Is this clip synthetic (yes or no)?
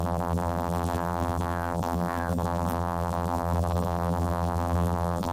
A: yes